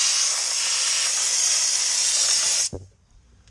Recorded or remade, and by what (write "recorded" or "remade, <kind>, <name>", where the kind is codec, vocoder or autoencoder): recorded